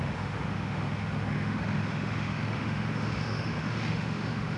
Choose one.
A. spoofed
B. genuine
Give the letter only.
A